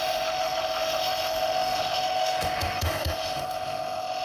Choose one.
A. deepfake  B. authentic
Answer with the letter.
A